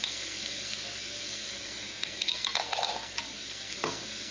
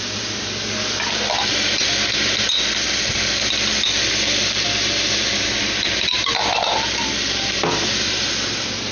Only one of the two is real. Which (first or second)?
second